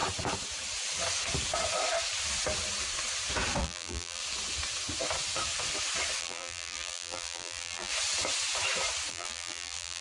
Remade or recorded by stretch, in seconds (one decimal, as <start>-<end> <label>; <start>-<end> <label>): 0.0-3.6 recorded; 3.6-4.2 remade; 4.2-6.2 recorded; 6.2-7.9 remade; 7.9-9.1 recorded; 9.1-10.0 remade